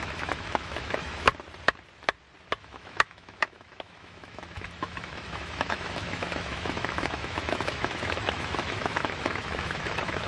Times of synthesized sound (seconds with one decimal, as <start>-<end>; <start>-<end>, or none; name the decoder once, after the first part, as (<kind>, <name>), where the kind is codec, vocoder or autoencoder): 0.0-1.3 (autoencoder, DAC-VAE); 2.6-10.3